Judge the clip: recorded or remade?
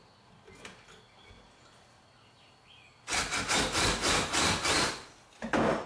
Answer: recorded